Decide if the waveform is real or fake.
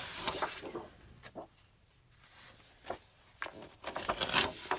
real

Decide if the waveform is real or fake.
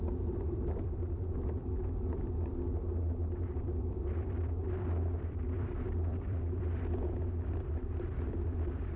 fake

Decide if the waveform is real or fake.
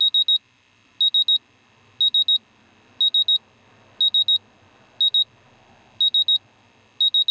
real